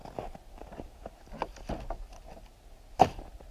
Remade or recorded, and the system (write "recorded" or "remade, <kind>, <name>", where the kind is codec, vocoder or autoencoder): recorded